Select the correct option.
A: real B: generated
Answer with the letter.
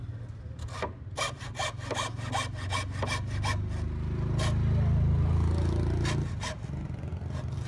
A